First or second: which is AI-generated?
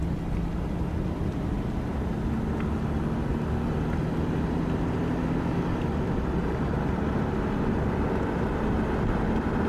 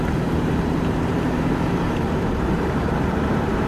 second